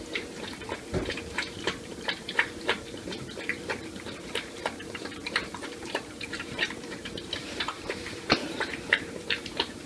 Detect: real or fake fake